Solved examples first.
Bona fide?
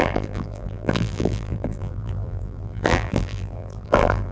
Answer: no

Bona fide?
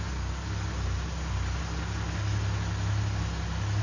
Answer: yes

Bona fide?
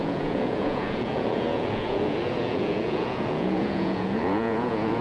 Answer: no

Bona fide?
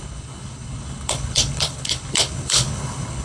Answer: no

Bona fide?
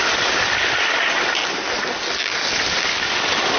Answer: yes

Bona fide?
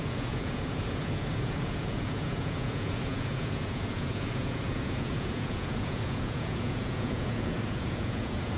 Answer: no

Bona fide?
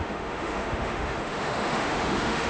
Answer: no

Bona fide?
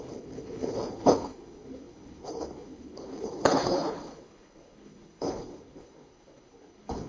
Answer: no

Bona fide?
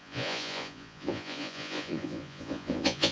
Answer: no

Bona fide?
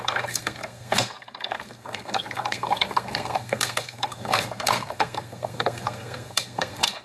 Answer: no